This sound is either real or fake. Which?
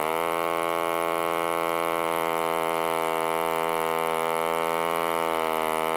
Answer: real